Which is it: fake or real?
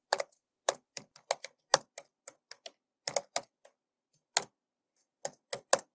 real